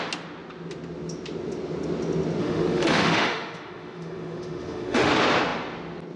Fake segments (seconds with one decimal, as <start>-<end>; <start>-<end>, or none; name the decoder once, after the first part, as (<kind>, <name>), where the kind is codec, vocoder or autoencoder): 2.4-5.1 (autoencoder, DAC-VAE)